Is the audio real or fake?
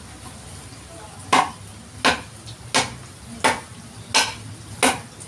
real